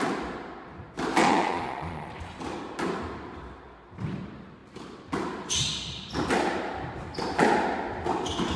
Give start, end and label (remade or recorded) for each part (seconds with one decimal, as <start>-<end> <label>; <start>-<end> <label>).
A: 0.0-1.2 recorded; 1.2-2.1 remade; 2.1-8.6 recorded